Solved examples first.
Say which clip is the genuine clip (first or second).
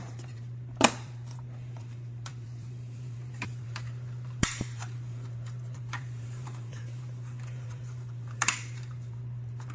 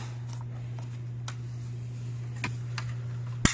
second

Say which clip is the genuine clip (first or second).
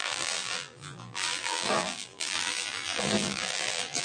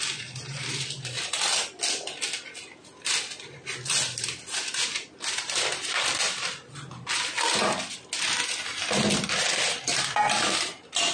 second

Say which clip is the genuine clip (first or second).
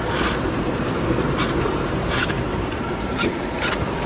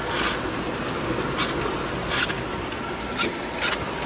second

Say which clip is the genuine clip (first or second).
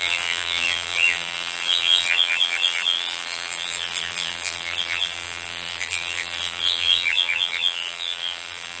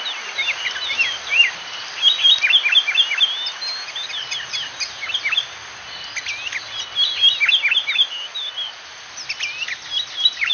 second